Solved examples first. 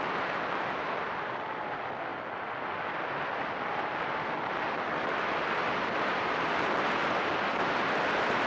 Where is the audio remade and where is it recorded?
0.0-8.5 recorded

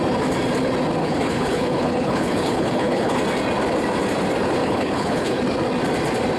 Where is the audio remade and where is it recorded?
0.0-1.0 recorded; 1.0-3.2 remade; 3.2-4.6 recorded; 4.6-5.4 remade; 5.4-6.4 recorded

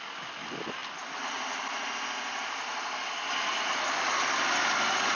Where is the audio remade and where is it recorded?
0.0-5.2 recorded

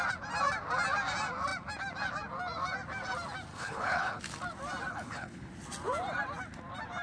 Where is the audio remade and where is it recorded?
0.0-3.5 recorded; 3.5-4.2 remade; 4.2-4.9 recorded; 4.9-5.5 remade; 5.5-7.0 recorded

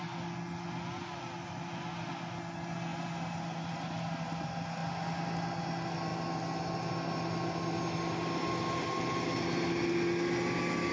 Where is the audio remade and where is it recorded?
0.0-10.9 recorded